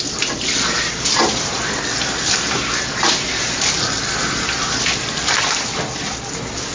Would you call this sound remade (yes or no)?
no